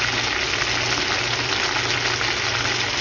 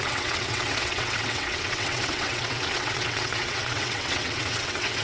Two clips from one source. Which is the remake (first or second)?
second